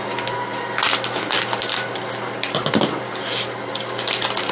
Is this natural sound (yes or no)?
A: yes